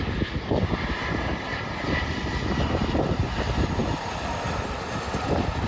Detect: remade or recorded remade